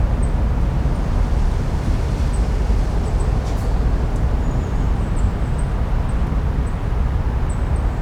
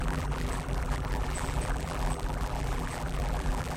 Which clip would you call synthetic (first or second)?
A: second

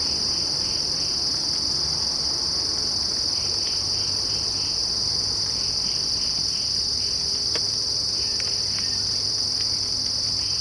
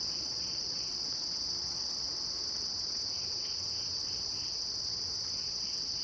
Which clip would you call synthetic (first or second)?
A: second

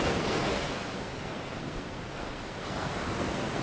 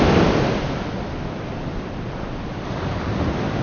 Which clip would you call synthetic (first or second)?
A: first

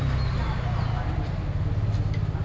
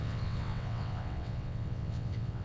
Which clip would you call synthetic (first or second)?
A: second